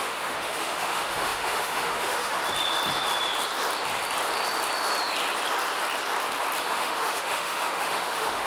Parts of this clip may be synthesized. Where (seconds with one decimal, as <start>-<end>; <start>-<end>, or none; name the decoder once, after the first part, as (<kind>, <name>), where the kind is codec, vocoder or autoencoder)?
0.0-2.4 (autoencoder, DAC-VAE); 6.6-8.5